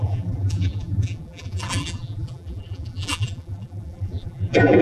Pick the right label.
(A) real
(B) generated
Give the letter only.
B